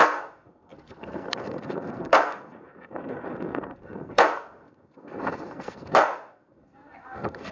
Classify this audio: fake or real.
fake